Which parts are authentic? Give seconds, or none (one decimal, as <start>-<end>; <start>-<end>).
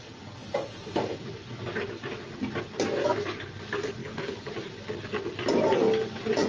0.0-4.0; 4.5-6.5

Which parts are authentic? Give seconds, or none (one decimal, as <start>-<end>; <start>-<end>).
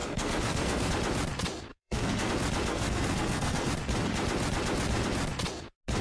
0.9-1.7; 2.3-2.7; 3.7-6.0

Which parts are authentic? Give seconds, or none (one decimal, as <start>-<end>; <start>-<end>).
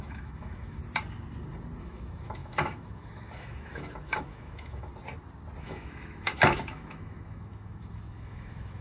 0.8-1.8; 4.9-5.6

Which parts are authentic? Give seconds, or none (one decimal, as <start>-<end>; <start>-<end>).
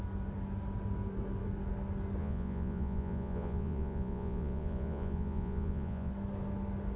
0.0-2.2; 6.1-7.0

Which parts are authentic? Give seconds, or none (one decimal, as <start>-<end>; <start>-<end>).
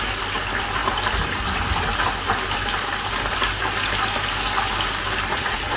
0.0-5.3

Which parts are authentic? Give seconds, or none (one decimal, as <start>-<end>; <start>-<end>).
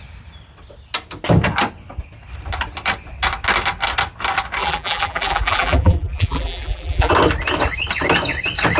0.0-4.6; 7.1-8.8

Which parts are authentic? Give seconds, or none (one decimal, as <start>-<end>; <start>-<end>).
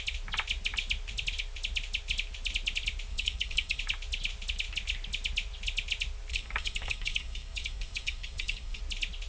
0.0-3.1; 3.8-6.3; 8.8-9.3